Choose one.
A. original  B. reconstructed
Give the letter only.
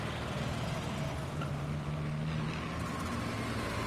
A